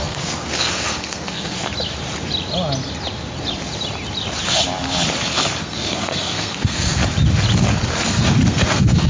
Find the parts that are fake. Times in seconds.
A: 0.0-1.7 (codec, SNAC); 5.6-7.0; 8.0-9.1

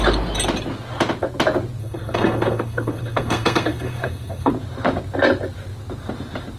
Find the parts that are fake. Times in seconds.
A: 1.8-4.5 (codec, SNAC)

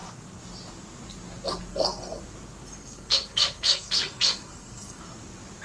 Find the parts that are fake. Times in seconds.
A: 1.7-2.2 (codec, SNAC); 2.8-5.0